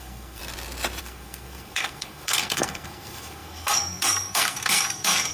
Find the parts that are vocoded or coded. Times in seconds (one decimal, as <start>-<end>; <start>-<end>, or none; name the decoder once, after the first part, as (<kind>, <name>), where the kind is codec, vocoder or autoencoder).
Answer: 0.0-0.4 (codec, SNAC); 1.0-5.3